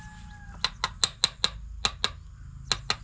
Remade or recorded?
recorded